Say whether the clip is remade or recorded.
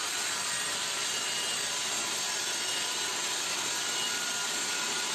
recorded